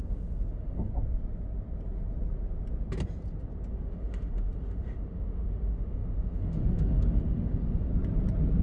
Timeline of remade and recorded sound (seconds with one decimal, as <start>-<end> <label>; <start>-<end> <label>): 0.0-0.9 remade; 0.9-3.7 recorded; 3.7-7.9 remade; 7.9-8.6 recorded